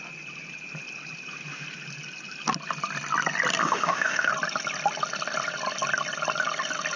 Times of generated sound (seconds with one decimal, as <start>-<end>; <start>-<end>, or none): 3.6-4.3